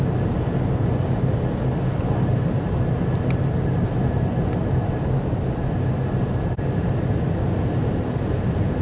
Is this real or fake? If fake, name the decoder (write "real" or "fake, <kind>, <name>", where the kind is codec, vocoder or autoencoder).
real